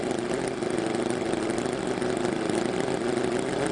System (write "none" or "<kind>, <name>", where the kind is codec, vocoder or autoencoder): none